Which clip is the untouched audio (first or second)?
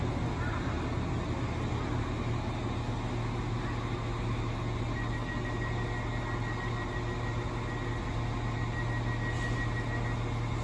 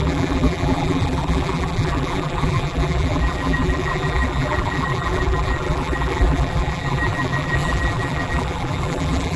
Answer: first